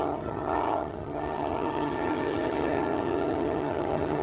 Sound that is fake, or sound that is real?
fake